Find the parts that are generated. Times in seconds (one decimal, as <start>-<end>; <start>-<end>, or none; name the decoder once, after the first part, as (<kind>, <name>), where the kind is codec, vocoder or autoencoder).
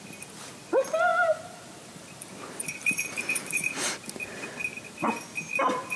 1.1-4.1 (vocoder, BigVGAN v2); 4.7-5.3